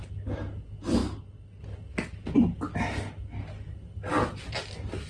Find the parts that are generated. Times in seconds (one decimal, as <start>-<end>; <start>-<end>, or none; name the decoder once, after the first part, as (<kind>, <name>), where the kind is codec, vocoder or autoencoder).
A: 4.1-4.6 (vocoder, BigVGAN v2)